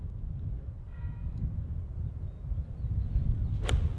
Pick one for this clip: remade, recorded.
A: recorded